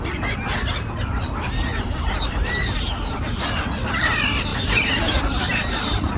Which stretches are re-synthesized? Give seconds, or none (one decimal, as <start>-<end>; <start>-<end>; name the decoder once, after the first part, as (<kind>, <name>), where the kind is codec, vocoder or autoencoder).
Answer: 1.7-3.4 (vocoder, BigVGAN v2); 4.5-6.2